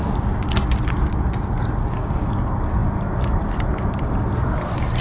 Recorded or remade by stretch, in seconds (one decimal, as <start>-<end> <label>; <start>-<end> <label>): 0.0-5.0 recorded

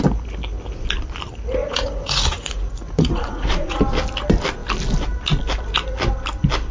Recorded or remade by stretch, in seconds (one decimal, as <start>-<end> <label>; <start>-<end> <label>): 0.0-1.6 recorded; 1.6-3.8 remade; 3.8-6.7 recorded